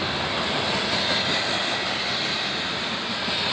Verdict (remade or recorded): recorded